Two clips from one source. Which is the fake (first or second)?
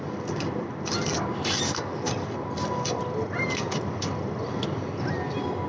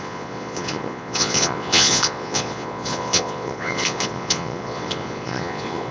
second